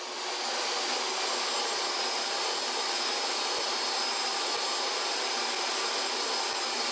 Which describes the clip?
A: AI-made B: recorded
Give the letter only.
B